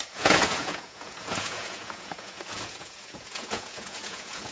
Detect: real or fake fake